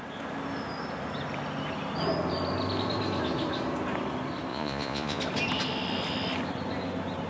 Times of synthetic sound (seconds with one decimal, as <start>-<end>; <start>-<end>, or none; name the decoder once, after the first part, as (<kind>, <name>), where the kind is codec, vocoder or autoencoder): 4.5-5.2 (vocoder, Vocos)

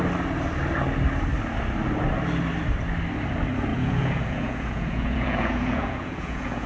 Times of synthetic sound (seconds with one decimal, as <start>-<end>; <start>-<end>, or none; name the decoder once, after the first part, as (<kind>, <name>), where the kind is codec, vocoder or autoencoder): 3.7-6.7 (vocoder, Vocos)

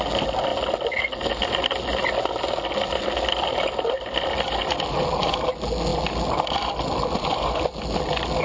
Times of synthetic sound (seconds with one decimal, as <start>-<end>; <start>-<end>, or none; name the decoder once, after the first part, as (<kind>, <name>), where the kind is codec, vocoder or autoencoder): none

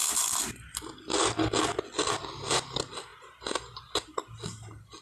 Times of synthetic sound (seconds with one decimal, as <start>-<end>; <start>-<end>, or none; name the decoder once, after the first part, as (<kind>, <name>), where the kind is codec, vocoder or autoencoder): none

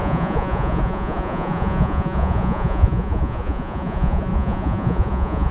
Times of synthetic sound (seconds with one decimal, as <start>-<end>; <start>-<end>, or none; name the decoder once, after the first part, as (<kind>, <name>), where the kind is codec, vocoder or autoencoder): 0.0-5.5 (vocoder, Vocos)

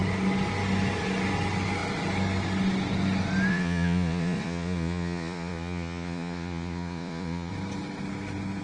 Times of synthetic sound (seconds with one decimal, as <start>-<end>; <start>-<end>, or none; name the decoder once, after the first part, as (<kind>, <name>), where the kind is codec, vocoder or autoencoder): 3.5-7.5 (vocoder, Vocos)

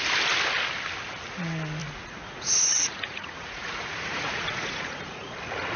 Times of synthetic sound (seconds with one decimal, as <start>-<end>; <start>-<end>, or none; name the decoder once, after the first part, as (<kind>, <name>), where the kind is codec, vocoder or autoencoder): 1.8-5.3 (vocoder, Vocos)

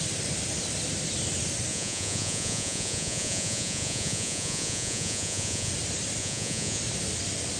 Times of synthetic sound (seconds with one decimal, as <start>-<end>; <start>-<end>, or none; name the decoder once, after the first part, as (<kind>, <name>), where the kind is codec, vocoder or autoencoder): 1.7-5.7 (vocoder, Vocos); 6.2-6.8